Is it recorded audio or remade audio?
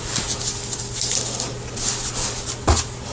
recorded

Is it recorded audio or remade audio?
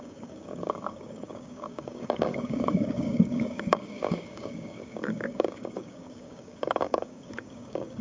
remade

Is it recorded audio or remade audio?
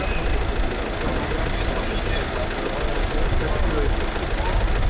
recorded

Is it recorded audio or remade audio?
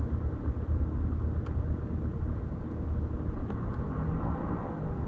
recorded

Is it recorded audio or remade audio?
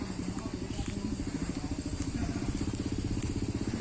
recorded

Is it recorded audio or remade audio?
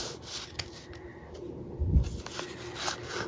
recorded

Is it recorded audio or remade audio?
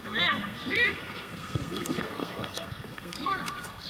remade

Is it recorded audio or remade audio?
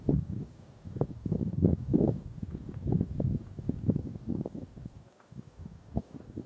remade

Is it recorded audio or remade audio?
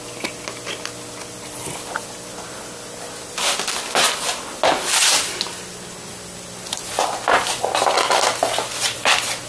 recorded